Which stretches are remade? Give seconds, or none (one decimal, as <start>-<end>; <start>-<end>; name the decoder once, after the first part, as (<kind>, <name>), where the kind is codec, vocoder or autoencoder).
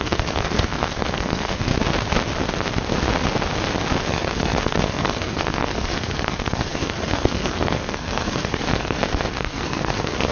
0.0-1.7 (codec, SNAC); 4.0-10.3